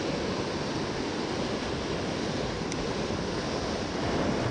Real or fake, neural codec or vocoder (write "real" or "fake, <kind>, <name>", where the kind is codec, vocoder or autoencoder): real